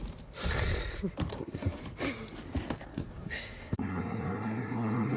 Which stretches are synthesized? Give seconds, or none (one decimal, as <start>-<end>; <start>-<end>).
1.3-1.8; 2.9-5.2